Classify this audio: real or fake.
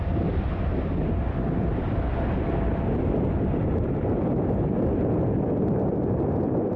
real